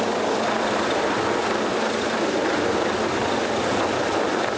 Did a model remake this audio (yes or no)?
no